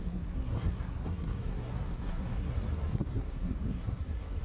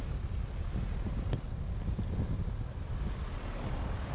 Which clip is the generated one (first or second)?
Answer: first